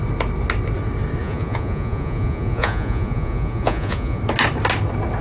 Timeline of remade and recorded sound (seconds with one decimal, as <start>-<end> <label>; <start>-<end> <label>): 0.0-1.2 recorded; 1.2-4.2 remade; 4.2-5.2 recorded